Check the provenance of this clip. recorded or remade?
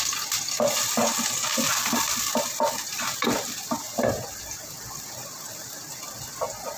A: recorded